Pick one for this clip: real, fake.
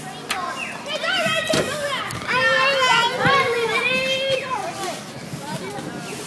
real